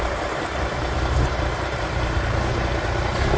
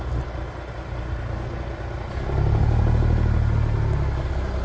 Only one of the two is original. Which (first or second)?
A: second